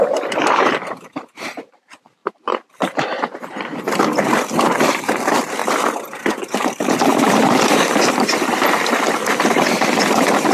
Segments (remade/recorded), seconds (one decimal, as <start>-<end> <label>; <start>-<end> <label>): 0.0-5.6 remade; 5.6-6.6 recorded; 6.6-10.5 remade